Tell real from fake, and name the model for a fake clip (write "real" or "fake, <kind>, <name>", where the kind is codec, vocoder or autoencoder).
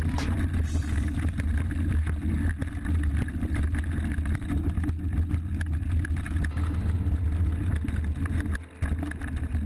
real